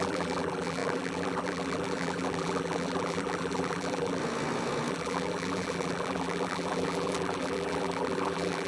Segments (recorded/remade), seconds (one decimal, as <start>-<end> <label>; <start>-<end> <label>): 0.0-4.2 remade; 4.2-4.9 recorded; 4.9-8.7 remade